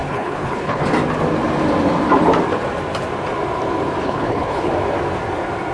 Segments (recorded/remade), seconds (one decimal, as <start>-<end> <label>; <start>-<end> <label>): 0.0-0.8 remade; 0.8-4.0 recorded; 4.0-4.7 remade; 4.7-5.7 recorded